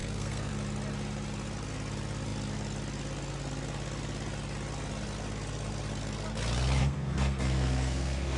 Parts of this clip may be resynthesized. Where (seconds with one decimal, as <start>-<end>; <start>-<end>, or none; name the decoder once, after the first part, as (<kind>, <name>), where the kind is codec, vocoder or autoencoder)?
0.0-0.5 (codec, SNAC); 6.8-8.4